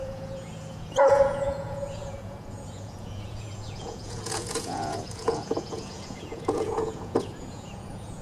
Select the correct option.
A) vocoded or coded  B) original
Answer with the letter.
A